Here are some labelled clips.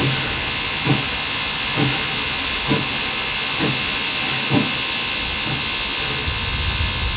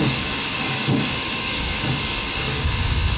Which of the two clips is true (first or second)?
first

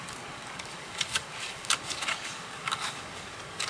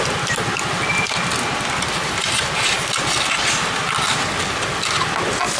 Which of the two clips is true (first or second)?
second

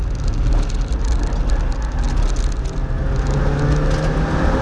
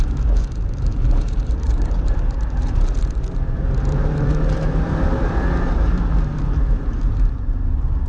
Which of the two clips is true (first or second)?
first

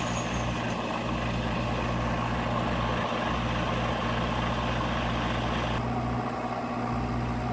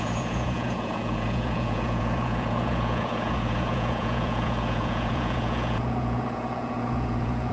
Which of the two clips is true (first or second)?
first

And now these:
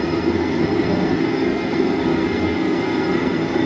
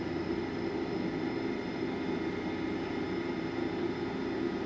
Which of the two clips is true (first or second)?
second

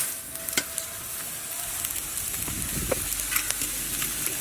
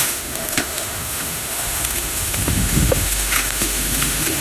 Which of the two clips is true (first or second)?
first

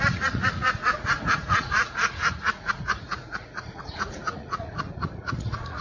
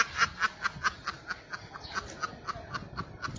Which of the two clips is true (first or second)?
second